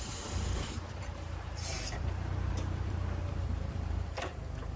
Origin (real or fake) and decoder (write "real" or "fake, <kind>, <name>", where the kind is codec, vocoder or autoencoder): fake, vocoder, BigVGAN v2